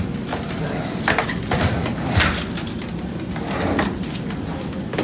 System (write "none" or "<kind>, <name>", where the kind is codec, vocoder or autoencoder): none